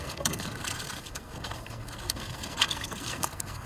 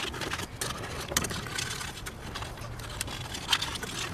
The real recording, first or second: second